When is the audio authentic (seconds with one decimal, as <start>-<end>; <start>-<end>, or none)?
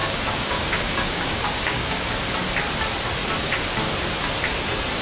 2.1-5.0